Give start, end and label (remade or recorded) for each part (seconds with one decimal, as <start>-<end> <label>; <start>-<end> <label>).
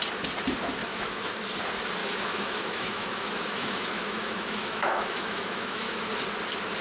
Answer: 0.0-0.8 recorded; 0.8-1.3 remade; 1.3-2.0 recorded; 2.0-6.1 remade; 6.1-6.8 recorded